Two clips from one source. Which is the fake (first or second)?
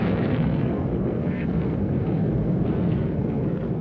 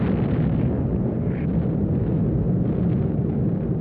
first